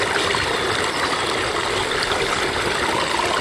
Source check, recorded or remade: recorded